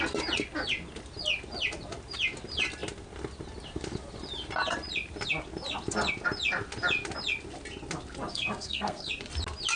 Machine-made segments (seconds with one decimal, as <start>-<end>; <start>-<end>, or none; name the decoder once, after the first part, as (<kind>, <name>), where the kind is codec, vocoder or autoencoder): 8.3-9.1 (codec, SNAC)